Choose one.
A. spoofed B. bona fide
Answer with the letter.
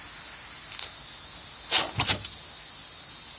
B